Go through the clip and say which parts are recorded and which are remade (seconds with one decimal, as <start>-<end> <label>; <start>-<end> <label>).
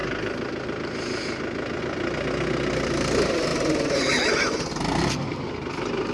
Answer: 0.0-6.1 recorded